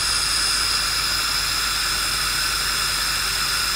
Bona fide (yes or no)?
yes